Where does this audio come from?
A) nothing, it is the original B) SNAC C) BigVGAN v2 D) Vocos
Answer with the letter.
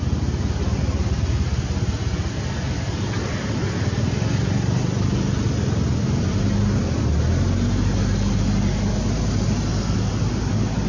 A